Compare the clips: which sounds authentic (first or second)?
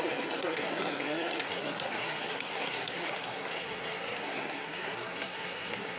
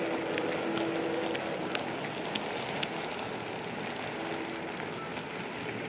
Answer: second